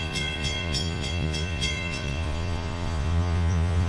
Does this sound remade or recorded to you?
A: remade